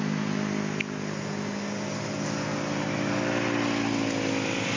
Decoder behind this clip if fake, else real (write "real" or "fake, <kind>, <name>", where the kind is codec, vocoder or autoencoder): real